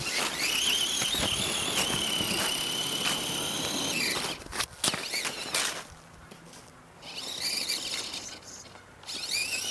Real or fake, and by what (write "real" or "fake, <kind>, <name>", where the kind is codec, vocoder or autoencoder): real